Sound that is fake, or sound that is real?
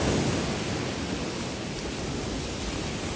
real